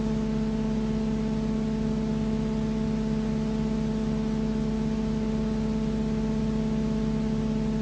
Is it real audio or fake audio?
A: real